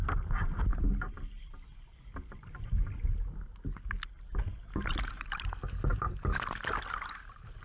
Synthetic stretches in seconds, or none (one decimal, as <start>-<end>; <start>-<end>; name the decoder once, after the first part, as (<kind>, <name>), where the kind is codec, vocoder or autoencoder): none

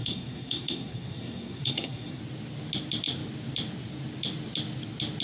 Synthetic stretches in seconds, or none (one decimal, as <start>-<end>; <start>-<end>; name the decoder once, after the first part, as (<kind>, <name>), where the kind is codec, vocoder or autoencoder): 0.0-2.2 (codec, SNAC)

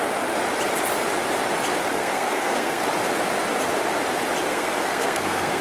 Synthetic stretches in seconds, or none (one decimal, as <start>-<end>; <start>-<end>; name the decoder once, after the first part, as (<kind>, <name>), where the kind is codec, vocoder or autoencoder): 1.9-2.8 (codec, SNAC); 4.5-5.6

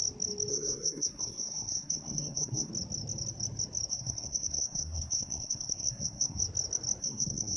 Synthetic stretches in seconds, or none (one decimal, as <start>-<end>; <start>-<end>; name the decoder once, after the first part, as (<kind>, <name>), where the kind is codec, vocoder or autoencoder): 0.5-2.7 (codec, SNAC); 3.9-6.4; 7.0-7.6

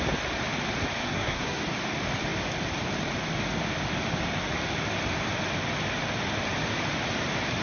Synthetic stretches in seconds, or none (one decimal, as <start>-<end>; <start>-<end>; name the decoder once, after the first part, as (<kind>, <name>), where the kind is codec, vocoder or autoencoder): 1.0-1.6 (codec, SNAC)

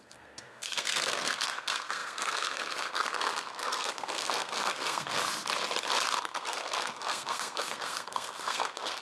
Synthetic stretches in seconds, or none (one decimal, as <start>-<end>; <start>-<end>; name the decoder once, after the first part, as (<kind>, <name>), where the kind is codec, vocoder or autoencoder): 0.0-5.2 (codec, SNAC); 6.2-9.0